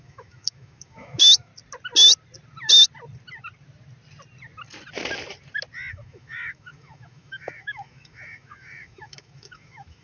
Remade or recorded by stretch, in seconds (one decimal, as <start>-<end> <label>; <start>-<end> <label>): 0.0-1.5 remade; 1.5-5.9 recorded; 5.9-10.0 remade